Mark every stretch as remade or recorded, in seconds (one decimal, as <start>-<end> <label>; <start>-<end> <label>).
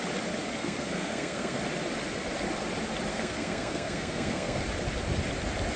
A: 0.0-0.6 recorded; 0.6-1.6 remade; 1.6-3.1 recorded; 3.1-4.6 remade; 4.6-5.8 recorded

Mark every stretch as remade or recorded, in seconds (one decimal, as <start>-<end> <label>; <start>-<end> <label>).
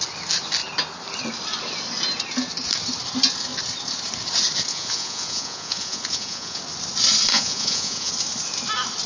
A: 0.0-4.7 recorded; 4.7-6.6 remade; 6.6-7.3 recorded; 7.3-8.1 remade; 8.1-9.1 recorded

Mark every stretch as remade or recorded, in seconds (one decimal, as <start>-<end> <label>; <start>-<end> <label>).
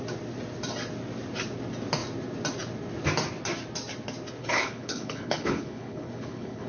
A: 0.0-4.4 recorded; 4.4-6.7 remade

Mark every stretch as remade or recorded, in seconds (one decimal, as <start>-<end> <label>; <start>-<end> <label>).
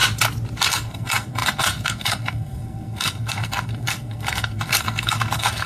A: 0.0-0.7 recorded; 0.7-5.7 remade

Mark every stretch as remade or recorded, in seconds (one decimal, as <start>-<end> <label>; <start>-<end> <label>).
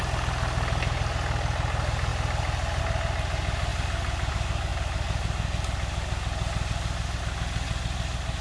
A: 0.0-8.4 recorded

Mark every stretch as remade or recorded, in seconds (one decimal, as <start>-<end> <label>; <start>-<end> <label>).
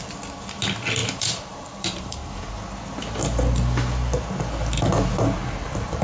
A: 0.0-1.0 recorded; 1.0-2.5 remade; 2.5-6.0 recorded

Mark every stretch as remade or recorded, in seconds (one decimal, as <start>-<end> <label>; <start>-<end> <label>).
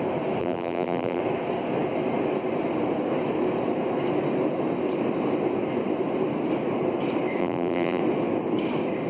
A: 0.0-0.4 recorded; 0.4-1.2 remade; 1.2-7.4 recorded; 7.4-8.0 remade; 8.0-9.1 recorded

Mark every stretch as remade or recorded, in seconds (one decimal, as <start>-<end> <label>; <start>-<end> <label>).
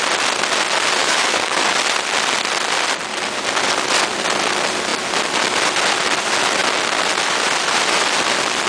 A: 0.0-1.0 recorded; 1.0-1.6 remade; 1.6-8.7 recorded